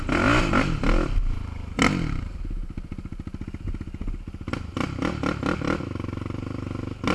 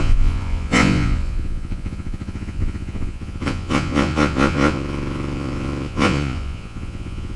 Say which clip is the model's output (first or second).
second